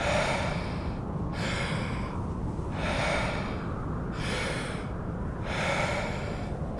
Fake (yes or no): no